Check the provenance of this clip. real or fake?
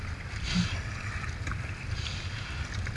real